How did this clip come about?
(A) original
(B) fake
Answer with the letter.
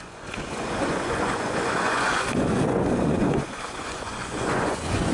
B